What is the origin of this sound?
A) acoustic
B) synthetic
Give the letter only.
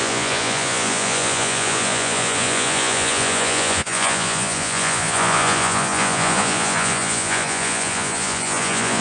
B